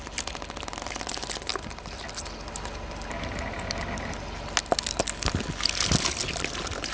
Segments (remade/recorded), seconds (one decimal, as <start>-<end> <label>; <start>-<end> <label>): 0.0-1.5 remade; 1.5-5.0 recorded; 5.0-6.9 remade

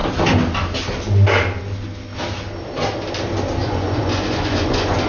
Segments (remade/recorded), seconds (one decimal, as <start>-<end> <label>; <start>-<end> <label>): 0.0-3.6 recorded; 3.6-5.1 remade

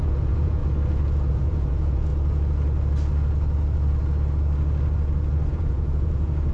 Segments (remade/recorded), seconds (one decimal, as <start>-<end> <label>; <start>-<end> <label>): 0.0-0.6 remade; 0.6-1.3 recorded; 1.3-2.1 remade; 2.1-5.5 recorded; 5.5-6.5 remade

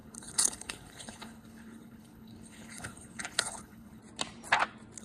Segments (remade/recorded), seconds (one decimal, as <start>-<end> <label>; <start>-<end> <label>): 0.0-4.0 remade; 4.0-5.0 recorded